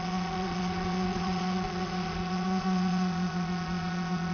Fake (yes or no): yes